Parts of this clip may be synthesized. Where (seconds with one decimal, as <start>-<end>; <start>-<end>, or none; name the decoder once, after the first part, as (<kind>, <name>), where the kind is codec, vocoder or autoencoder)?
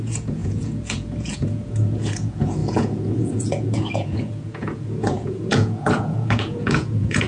0.0-7.3 (vocoder, Vocos)